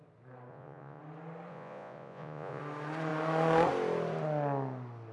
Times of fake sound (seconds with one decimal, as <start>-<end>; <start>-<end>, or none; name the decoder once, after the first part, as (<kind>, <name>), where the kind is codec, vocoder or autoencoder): 0.5-1.0 (vocoder, Vocos); 1.5-2.6